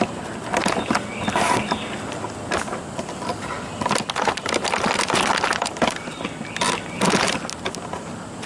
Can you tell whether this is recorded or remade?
recorded